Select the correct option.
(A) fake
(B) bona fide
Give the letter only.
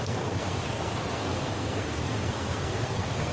A